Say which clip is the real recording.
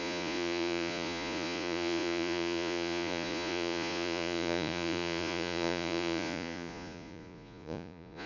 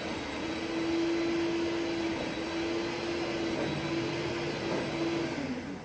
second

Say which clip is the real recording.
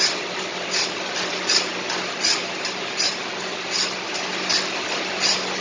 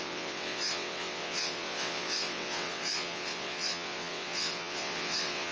first